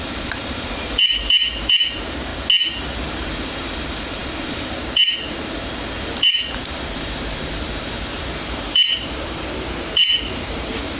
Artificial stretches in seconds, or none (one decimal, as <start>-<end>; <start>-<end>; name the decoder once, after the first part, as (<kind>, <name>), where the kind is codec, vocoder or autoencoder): 0.0-2.3 (vocoder, BigVGAN v2); 3.0-11.0